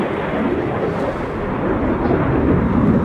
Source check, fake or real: real